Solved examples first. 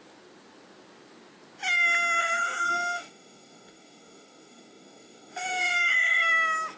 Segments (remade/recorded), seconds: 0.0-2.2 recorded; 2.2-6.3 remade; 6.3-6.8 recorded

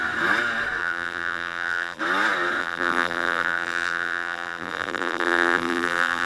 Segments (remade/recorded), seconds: 0.0-0.8 recorded; 0.8-2.0 remade; 2.0-2.6 recorded; 2.6-6.3 remade

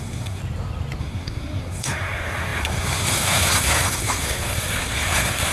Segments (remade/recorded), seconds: 0.0-0.4 remade; 0.4-1.0 recorded; 1.0-5.5 remade

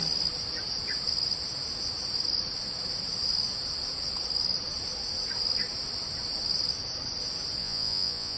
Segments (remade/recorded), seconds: 0.0-7.6 recorded; 7.6-8.4 remade